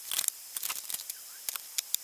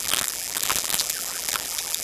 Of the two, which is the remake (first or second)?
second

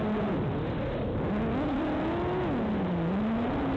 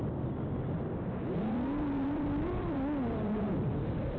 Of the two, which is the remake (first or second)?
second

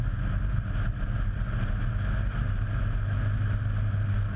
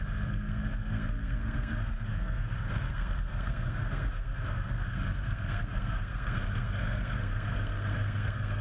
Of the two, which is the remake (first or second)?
second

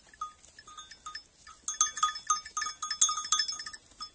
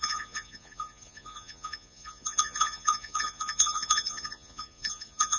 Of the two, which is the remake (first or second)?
second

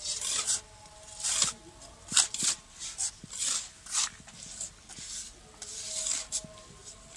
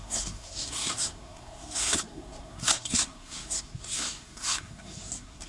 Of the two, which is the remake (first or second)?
second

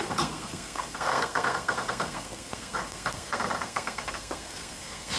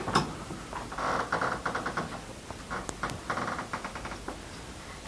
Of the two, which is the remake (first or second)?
first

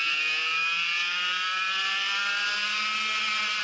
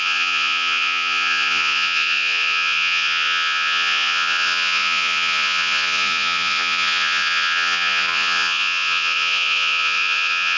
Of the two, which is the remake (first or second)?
second